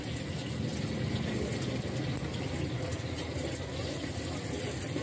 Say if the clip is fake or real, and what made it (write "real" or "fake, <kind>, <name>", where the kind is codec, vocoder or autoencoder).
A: real